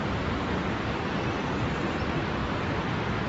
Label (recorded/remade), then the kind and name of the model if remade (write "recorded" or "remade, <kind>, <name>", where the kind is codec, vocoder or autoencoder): recorded